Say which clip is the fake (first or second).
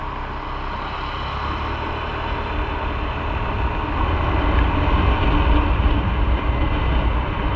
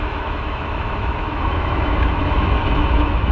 second